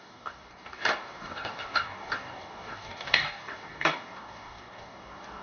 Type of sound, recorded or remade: remade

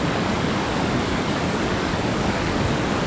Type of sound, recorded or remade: remade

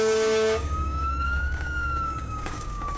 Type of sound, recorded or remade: remade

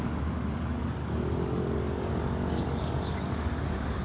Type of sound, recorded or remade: remade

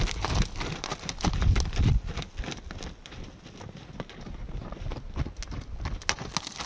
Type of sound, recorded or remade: recorded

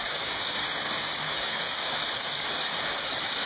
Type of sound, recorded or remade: remade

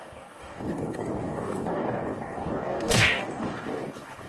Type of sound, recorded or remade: remade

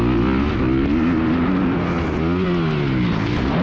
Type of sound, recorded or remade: recorded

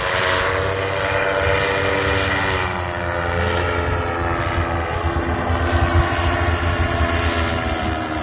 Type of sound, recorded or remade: recorded